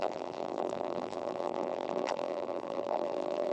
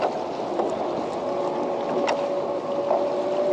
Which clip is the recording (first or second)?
second